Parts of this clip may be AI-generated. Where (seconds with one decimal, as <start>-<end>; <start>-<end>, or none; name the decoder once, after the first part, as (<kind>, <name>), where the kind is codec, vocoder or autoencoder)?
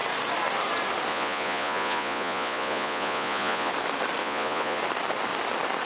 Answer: 1.1-3.7 (vocoder, Vocos); 4.2-4.8